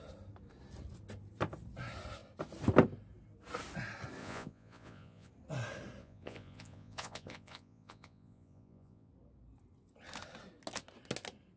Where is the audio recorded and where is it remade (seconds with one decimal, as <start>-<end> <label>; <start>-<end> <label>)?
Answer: 0.0-4.2 recorded; 4.2-5.3 remade; 5.3-6.0 recorded; 6.0-9.1 remade; 9.1-11.6 recorded